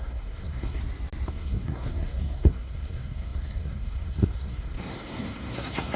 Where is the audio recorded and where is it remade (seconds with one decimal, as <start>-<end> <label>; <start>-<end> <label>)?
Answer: 0.0-0.8 remade; 0.8-1.3 recorded; 1.3-6.0 remade